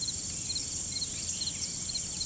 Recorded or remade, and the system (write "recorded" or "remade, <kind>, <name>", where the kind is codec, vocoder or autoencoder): recorded